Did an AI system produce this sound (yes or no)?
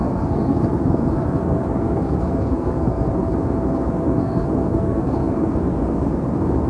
yes